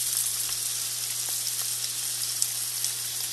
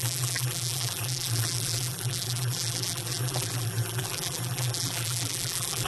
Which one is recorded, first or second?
first